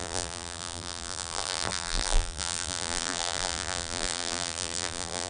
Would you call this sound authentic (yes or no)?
no